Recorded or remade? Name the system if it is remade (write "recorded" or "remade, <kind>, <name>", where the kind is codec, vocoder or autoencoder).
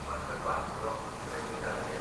remade, autoencoder, DAC-VAE